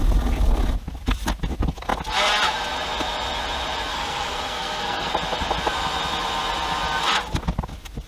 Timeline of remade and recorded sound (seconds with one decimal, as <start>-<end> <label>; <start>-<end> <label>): 0.0-3.9 recorded; 3.9-5.1 remade; 5.1-8.1 recorded